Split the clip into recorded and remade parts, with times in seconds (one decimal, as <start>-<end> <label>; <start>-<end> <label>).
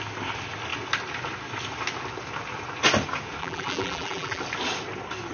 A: 0.0-3.4 recorded; 3.4-4.4 remade; 4.4-5.3 recorded